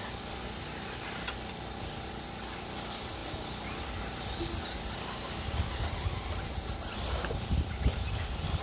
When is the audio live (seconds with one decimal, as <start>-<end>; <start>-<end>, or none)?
0.0-8.6